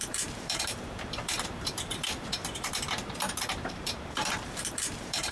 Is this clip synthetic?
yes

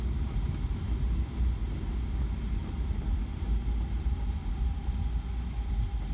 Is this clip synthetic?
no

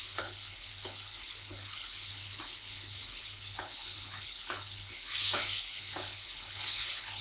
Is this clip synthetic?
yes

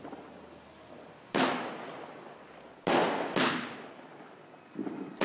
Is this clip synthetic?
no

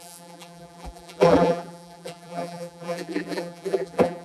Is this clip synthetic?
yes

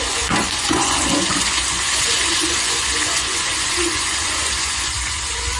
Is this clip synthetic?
yes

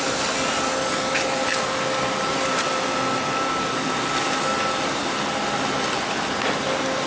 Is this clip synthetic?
no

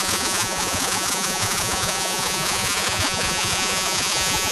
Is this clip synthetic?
yes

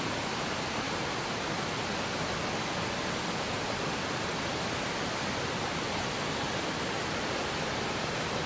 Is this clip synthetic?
no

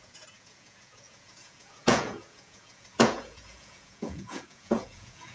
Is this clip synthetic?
yes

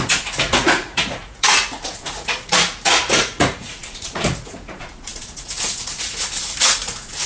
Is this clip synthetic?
yes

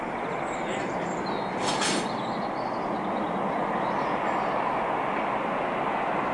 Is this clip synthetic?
no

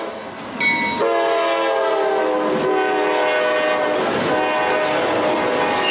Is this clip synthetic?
no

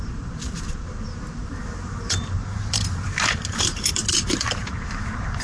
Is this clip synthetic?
yes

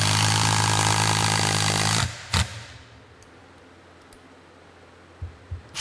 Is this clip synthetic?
no